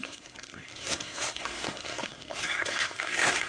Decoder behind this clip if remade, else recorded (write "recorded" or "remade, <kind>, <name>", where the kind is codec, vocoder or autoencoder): remade, codec, SNAC